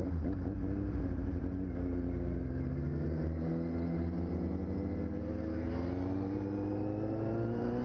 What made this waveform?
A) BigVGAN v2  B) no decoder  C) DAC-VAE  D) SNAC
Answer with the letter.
B